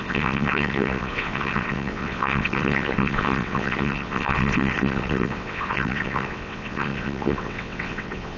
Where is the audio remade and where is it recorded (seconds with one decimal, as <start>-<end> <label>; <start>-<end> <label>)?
0.0-8.4 remade